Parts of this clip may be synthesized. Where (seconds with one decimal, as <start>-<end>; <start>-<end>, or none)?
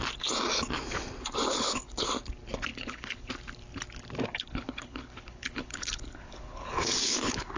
1.5-2.1; 2.7-3.3; 4.3-7.6